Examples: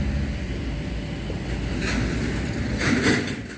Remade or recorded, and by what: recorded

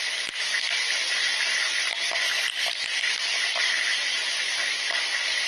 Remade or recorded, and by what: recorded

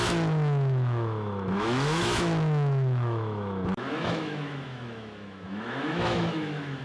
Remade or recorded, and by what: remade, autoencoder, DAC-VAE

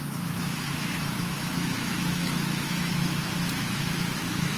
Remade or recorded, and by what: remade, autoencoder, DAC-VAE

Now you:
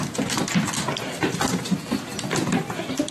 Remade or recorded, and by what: recorded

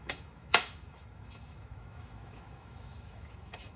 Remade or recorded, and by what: remade, autoencoder, DAC-VAE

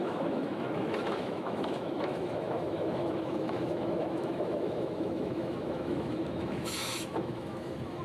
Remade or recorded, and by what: remade, autoencoder, DAC-VAE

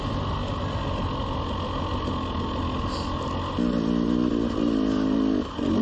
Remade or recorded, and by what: recorded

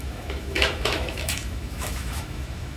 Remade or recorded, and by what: remade, autoencoder, DAC-VAE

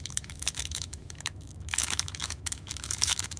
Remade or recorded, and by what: remade, autoencoder, DAC-VAE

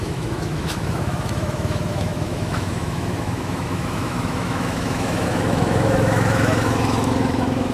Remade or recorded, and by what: remade, autoencoder, DAC-VAE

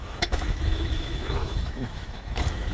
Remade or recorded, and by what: remade, autoencoder, DAC-VAE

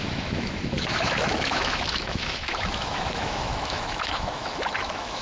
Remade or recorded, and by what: remade, autoencoder, DAC-VAE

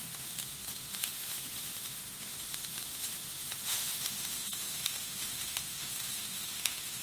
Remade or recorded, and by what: remade, autoencoder, DAC-VAE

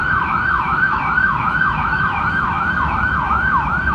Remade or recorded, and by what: remade, autoencoder, DAC-VAE